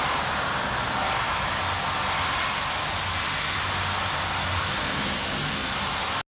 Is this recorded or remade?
recorded